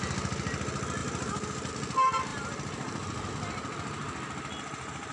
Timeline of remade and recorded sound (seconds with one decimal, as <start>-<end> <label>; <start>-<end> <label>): 0.0-1.0 recorded; 1.0-1.7 remade; 1.7-2.3 recorded; 2.3-3.3 remade; 3.3-5.1 recorded